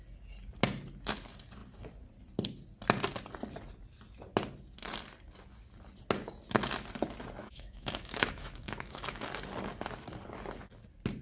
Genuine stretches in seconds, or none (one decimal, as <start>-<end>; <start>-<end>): 0.0-7.4; 9.3-11.2